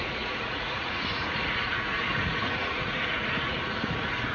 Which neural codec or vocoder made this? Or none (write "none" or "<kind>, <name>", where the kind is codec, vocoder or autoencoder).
vocoder, Vocos